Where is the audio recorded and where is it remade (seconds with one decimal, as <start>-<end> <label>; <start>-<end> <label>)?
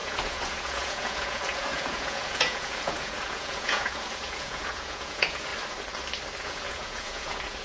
0.0-5.5 remade; 5.5-6.4 recorded; 6.4-7.6 remade